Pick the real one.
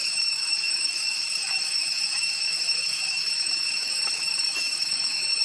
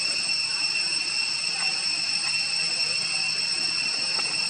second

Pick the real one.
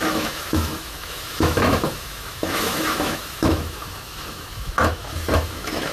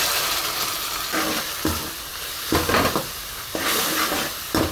second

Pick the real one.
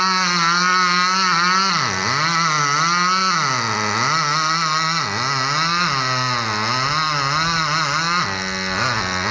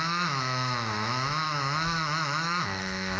first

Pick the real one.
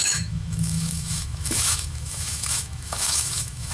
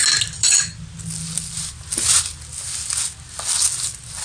second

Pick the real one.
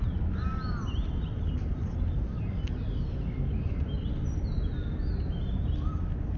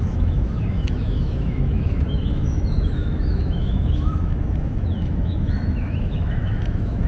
first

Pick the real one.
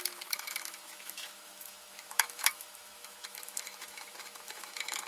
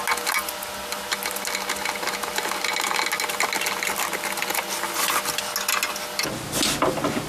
second